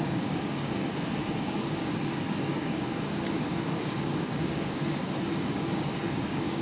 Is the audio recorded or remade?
remade